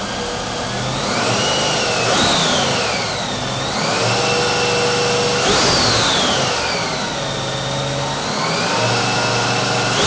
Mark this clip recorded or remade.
recorded